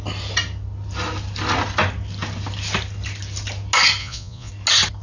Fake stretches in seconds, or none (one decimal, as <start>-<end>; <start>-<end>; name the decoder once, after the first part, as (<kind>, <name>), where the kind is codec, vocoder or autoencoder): 4.0-4.5 (vocoder, Vocos)